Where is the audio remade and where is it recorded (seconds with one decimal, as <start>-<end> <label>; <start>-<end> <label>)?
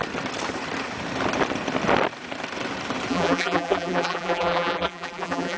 0.0-3.1 recorded; 3.1-5.6 remade